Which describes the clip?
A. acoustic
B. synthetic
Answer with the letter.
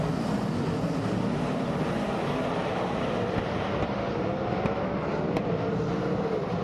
B